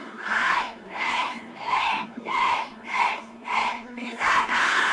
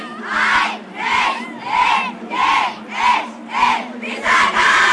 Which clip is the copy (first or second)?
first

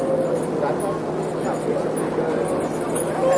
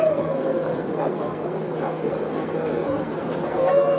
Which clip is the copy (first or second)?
second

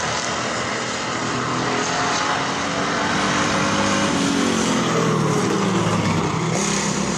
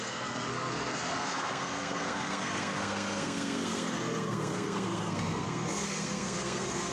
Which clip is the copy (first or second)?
second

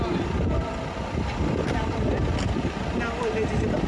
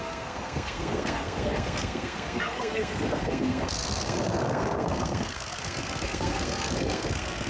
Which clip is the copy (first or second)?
second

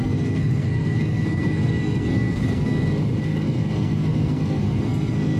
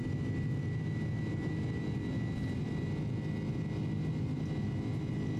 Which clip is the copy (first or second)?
first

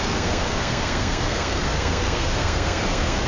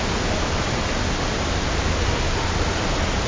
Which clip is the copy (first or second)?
first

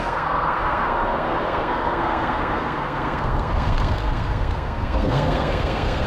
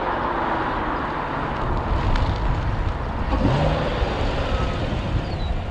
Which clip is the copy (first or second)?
first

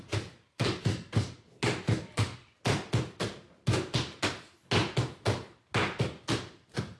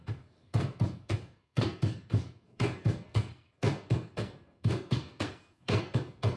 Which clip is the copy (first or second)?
second